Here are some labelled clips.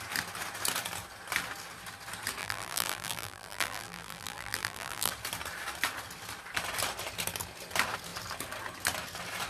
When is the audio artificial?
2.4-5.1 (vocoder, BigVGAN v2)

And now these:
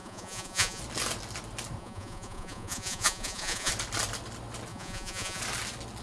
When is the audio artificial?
0.0-0.8 (vocoder, Vocos); 1.8-3.7; 4.7-5.4

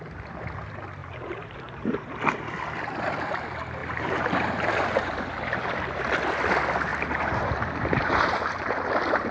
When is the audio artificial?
1.0-2.0 (vocoder, BigVGAN v2); 3.8-5.2; 6.9-8.7

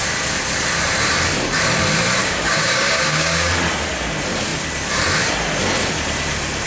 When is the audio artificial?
2.2-3.5 (codec, DAC)

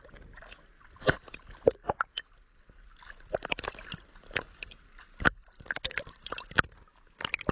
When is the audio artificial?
none